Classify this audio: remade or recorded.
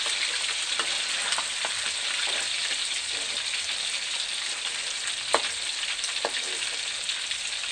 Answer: remade